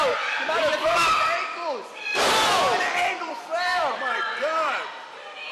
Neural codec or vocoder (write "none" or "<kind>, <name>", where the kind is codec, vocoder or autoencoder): vocoder, BigVGAN v2